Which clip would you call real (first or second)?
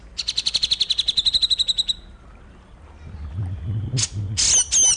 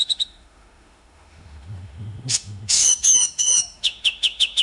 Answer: first